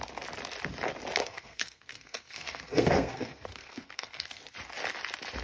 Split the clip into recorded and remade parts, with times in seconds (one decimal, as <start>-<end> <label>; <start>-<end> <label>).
0.0-1.2 recorded; 1.2-4.4 remade; 4.4-5.4 recorded